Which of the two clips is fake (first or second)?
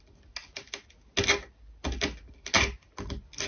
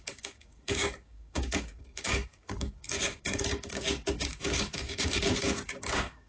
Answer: second